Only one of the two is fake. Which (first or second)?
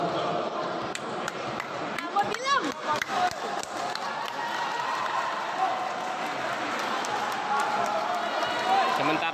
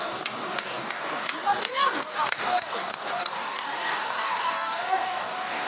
second